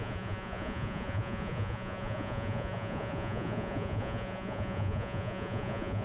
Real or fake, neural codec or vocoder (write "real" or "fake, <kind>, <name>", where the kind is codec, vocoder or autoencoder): fake, vocoder, Vocos